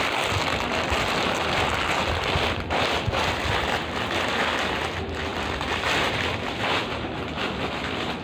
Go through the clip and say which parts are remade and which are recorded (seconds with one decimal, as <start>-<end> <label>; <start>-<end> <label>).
0.0-8.2 recorded